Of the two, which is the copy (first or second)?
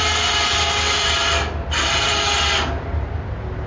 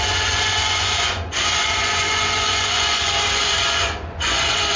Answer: second